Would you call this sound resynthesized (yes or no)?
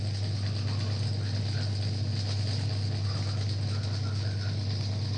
no